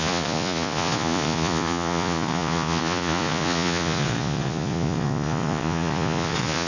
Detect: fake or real fake